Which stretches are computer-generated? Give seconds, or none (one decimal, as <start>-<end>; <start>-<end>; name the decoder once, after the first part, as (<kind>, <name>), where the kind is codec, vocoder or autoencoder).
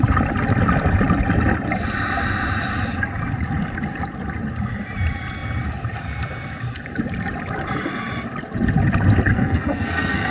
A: 9.3-10.3 (codec, SNAC)